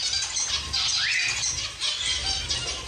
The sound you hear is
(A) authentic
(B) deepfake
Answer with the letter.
A